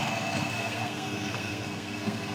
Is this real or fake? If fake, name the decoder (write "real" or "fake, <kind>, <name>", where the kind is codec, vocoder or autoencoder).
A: fake, codec, SNAC